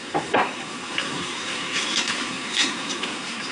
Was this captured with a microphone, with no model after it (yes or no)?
no